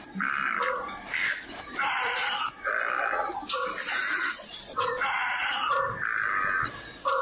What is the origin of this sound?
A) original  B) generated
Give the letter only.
B